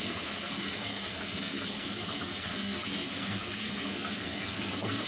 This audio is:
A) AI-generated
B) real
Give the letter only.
A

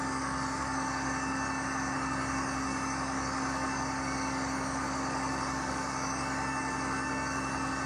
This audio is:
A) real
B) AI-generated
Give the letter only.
B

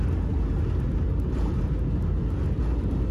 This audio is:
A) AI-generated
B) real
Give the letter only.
B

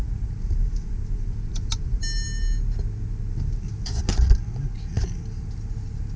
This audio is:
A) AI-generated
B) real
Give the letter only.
B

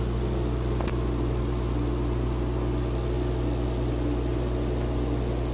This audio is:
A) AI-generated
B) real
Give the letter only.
B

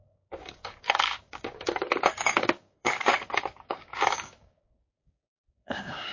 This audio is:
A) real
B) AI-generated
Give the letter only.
B